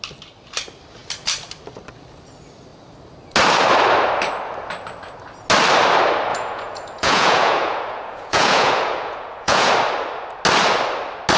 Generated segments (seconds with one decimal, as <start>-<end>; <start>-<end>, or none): 6.3-9.7